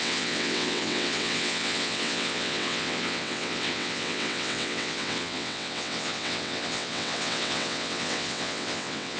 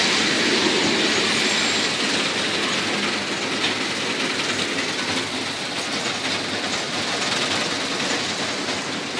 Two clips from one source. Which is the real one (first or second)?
second